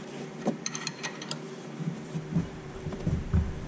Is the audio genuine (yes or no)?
no